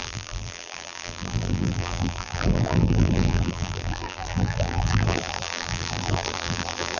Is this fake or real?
fake